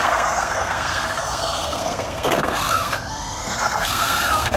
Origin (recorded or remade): remade